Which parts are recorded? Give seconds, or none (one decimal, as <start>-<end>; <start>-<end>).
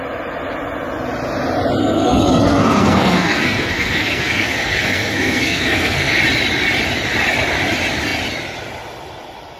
0.0-1.8; 6.2-9.6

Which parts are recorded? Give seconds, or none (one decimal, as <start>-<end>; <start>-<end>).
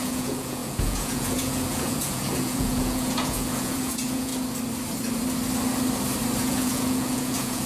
4.3-6.4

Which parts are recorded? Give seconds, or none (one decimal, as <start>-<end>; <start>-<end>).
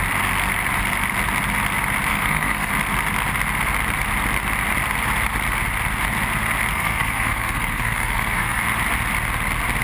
0.0-2.1; 2.7-6.7; 8.6-9.8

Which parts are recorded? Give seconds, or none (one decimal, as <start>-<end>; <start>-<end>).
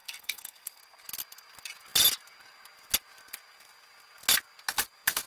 0.8-5.3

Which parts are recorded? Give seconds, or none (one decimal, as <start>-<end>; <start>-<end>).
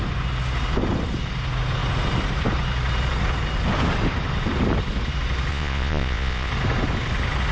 0.0-5.5; 6.5-7.5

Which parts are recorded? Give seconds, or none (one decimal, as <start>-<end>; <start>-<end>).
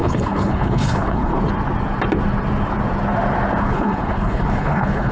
1.3-3.6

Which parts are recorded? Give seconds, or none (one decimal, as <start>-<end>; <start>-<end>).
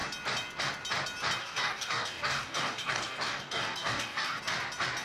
0.0-1.4; 4.4-5.0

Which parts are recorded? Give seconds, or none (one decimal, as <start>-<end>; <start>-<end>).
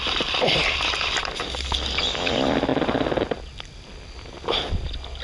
0.0-5.2